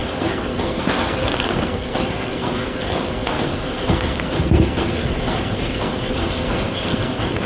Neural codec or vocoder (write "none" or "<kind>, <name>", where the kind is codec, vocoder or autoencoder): codec, SNAC